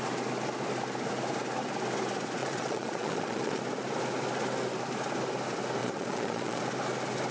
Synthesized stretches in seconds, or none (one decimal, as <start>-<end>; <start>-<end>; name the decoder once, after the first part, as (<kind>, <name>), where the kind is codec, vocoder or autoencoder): 2.4-3.6 (vocoder, Vocos); 5.8-6.6